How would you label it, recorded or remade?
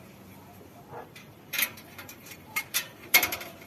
remade